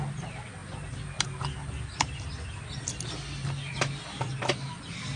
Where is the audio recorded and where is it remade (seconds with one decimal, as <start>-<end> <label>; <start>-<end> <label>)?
0.0-5.2 recorded